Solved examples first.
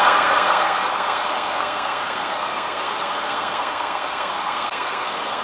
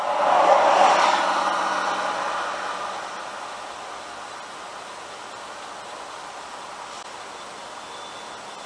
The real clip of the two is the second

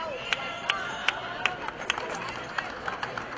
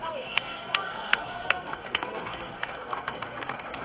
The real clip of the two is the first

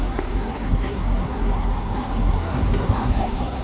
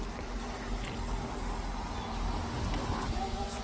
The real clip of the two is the second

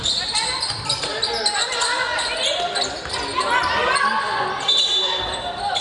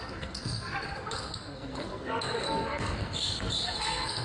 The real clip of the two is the first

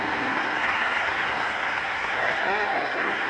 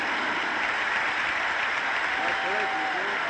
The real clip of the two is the second